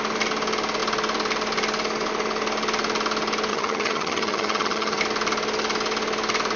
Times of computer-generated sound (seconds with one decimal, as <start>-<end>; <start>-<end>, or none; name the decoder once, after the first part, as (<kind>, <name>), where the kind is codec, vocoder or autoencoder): 3.5-5.0 (vocoder, HiFi-GAN)